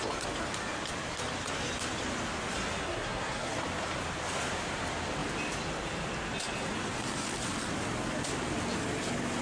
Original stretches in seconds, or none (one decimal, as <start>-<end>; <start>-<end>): 0.0-2.8; 3.5-9.4